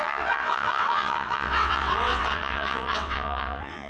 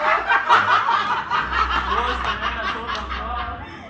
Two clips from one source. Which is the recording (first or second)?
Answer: second